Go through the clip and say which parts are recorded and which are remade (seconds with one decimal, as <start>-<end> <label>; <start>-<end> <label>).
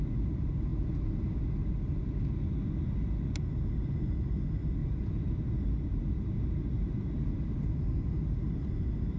0.0-0.7 recorded; 0.7-1.4 remade; 1.4-4.8 recorded; 4.8-9.2 remade